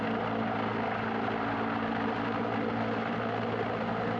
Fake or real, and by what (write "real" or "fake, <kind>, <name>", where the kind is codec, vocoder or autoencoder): real